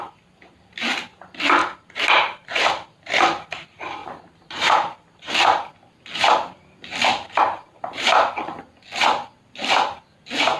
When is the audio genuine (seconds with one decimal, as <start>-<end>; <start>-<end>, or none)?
0.0-1.6; 3.1-4.0; 5.3-7.1; 8.3-10.6